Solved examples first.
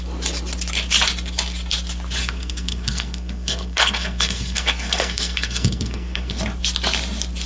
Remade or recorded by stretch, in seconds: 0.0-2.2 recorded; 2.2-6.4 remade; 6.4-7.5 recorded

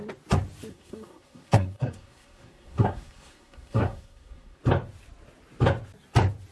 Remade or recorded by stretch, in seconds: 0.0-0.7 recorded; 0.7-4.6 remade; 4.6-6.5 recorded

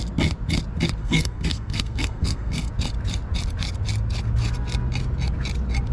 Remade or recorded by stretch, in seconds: 0.0-1.0 recorded; 1.0-2.7 remade; 2.7-5.9 recorded

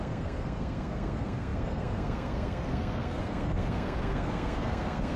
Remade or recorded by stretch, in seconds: 0.0-5.2 remade

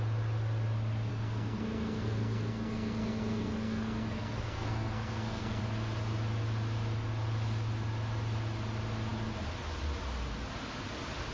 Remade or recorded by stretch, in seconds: 0.0-1.1 recorded; 1.1-5.6 remade; 5.6-11.3 recorded